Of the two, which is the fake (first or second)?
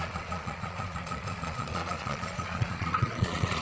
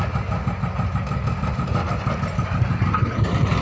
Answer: first